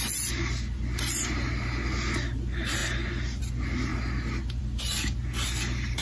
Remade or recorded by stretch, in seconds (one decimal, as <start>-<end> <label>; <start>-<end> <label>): 0.0-6.0 recorded